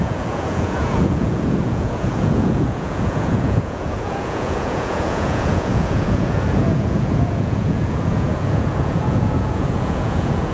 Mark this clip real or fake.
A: fake